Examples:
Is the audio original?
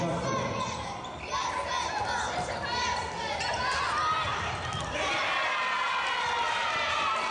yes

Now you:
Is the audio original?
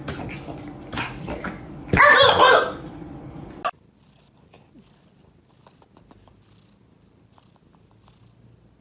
yes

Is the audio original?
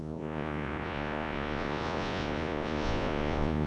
no